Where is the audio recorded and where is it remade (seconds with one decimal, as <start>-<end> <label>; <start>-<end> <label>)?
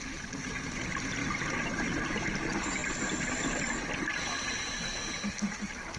0.0-6.0 recorded